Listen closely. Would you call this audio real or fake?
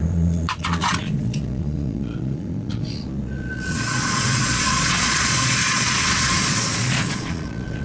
fake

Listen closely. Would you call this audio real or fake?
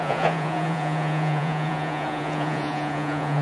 fake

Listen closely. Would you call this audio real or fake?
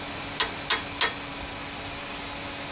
real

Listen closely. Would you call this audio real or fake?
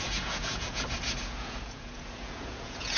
fake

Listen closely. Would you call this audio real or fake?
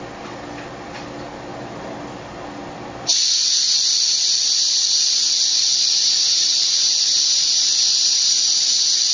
real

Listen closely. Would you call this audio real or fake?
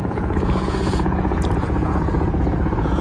fake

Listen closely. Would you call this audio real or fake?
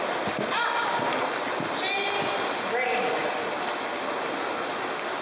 real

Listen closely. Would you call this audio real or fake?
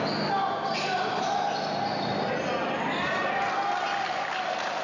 real